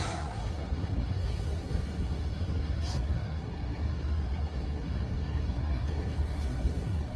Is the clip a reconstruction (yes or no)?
yes